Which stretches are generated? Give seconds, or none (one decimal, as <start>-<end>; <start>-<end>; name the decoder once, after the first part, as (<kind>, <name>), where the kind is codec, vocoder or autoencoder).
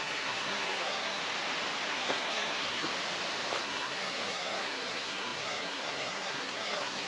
0.0-1.2 (codec, SNAC); 1.9-2.9; 3.6-7.1